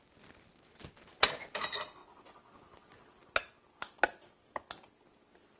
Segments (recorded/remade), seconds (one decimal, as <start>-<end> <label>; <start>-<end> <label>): 0.0-5.6 recorded